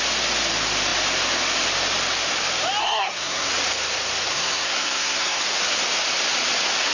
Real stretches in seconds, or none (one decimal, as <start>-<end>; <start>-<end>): 0.0-2.8; 3.5-4.3; 5.4-6.9